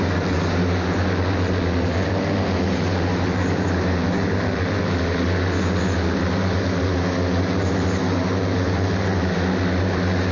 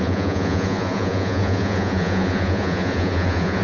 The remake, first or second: second